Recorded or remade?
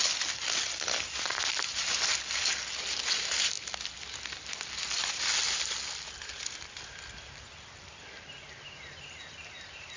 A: recorded